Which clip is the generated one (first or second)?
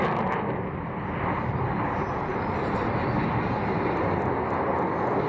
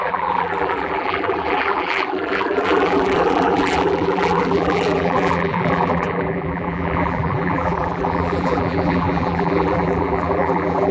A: second